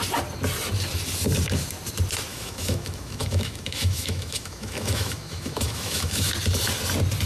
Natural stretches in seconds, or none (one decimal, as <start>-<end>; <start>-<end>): 0.0-2.3; 6.3-7.3